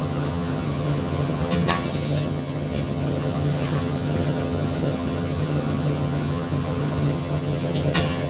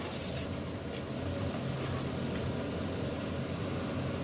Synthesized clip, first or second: first